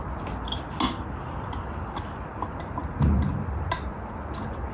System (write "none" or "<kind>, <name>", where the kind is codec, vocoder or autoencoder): none